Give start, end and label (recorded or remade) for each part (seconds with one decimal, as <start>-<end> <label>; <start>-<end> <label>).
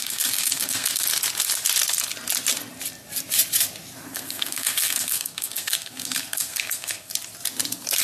0.0-1.1 remade; 1.1-4.1 recorded; 4.1-7.1 remade; 7.1-8.0 recorded